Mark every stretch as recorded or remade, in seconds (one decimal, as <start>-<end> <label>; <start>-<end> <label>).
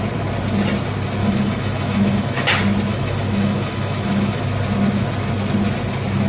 0.0-1.2 recorded; 1.2-2.5 remade; 2.5-2.9 recorded; 2.9-4.4 remade; 4.4-6.3 recorded